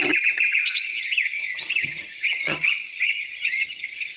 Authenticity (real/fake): fake